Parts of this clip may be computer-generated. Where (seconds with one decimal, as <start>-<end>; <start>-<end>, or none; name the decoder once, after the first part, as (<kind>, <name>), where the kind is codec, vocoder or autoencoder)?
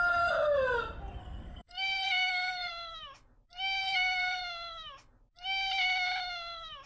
1.2-2.7 (codec, SNAC); 3.8-4.4